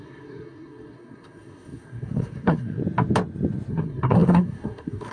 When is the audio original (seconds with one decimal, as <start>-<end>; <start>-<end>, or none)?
2.8-3.7